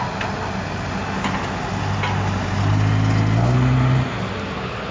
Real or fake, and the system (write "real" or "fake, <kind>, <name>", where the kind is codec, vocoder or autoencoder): real